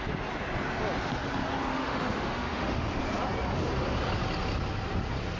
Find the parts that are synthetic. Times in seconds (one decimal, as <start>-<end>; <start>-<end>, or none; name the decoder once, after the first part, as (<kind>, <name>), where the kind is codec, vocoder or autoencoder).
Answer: 1.7-3.0 (autoencoder, DAC-VAE)